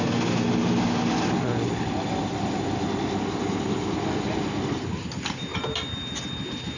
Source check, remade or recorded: recorded